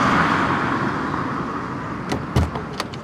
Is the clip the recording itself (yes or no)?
yes